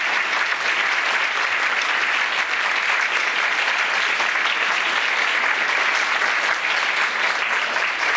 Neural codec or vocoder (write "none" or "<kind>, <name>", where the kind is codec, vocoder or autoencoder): none